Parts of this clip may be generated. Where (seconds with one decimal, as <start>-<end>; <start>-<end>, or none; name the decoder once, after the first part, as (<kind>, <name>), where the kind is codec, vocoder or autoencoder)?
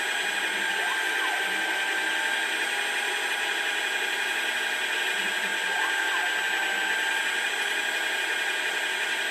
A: none